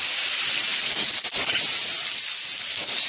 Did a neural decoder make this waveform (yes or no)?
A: no